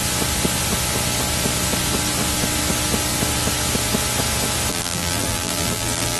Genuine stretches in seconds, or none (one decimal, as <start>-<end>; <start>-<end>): 0.0-4.7